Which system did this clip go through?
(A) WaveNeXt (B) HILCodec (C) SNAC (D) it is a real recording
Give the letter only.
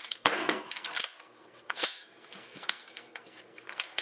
C